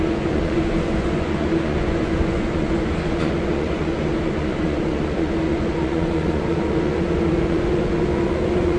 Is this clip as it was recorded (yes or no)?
no